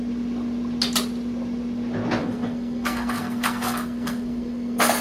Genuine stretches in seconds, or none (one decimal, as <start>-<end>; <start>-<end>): 0.0-2.2

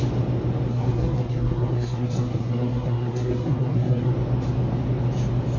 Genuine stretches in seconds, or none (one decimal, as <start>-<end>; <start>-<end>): 0.0-0.7; 4.1-5.6

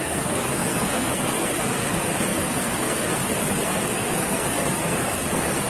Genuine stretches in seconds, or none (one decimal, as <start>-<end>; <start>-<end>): none

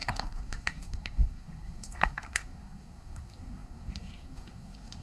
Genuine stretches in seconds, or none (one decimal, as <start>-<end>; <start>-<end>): none

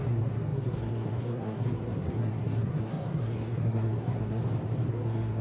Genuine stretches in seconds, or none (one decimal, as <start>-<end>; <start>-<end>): 4.4-4.9

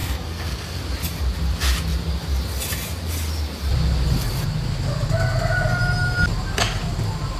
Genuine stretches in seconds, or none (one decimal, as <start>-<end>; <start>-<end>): 0.8-7.4

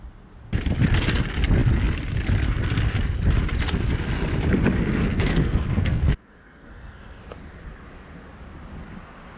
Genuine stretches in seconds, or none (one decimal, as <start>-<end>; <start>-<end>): 0.0-5.1; 7.2-9.4